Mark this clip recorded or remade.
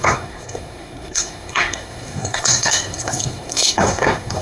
remade